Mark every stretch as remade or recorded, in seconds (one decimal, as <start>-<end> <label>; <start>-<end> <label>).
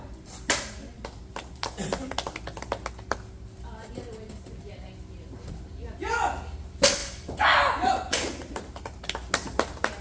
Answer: 0.0-10.0 recorded